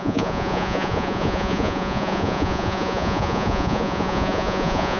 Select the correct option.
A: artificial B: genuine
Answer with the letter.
A